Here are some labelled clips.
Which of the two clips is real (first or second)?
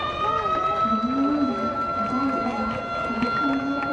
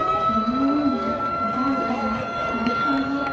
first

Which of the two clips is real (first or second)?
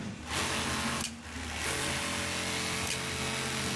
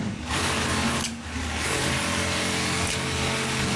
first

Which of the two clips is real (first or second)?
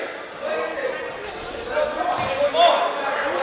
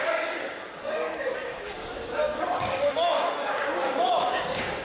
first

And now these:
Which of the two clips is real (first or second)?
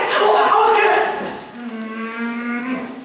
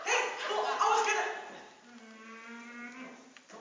second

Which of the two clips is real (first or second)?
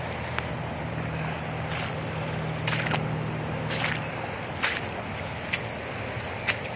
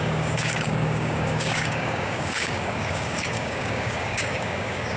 first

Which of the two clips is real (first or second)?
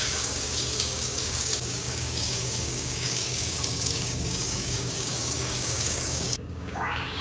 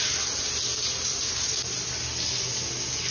second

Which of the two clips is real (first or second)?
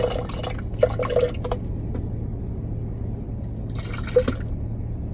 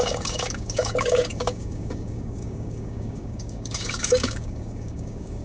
first